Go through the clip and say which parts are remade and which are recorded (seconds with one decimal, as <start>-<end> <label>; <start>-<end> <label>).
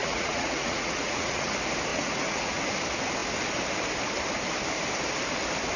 0.0-1.5 remade; 1.5-1.9 recorded; 1.9-2.6 remade; 2.6-5.8 recorded